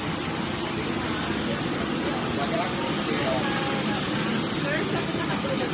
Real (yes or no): no